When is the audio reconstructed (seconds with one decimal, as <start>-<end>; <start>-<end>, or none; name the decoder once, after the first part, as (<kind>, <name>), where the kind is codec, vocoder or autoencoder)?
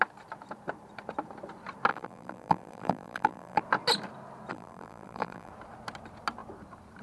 1.9-3.6 (vocoder, BigVGAN v2); 4.5-5.5